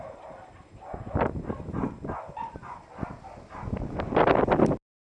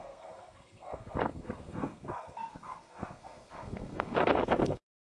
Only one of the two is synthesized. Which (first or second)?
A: second